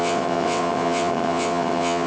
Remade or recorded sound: remade